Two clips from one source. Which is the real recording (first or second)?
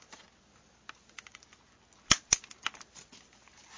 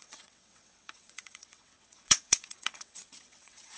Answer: first